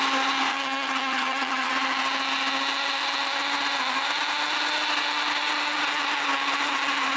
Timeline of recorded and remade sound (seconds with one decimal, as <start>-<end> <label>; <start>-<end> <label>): 0.0-0.5 recorded; 0.5-1.7 remade; 1.7-7.2 recorded